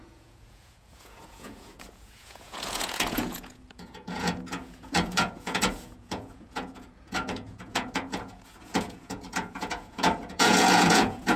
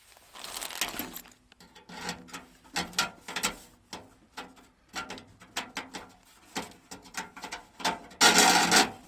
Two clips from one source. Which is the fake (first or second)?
first